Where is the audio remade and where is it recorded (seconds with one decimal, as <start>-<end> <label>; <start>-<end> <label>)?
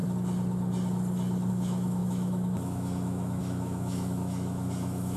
0.0-1.5 recorded; 1.5-5.2 remade